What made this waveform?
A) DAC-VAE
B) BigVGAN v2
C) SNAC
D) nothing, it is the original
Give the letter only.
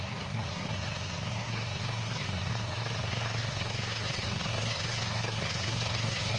C